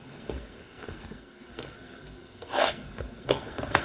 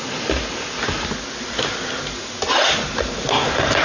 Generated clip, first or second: first